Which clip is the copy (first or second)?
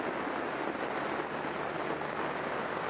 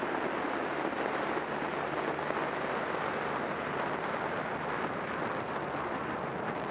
first